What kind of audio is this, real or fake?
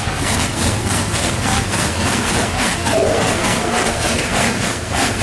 fake